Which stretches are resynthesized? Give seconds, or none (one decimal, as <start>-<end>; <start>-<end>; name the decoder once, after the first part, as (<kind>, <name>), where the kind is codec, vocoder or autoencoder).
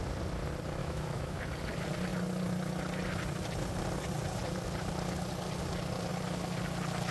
0.8-1.4 (autoencoder, DAC-VAE)